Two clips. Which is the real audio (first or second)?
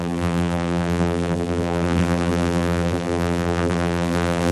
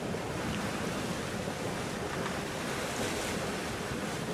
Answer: second